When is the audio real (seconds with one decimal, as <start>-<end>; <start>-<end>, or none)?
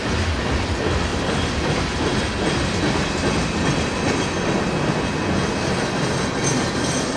0.0-1.1; 1.8-7.2